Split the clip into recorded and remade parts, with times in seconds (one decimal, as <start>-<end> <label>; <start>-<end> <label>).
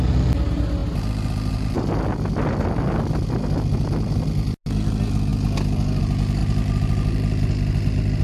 0.0-8.2 recorded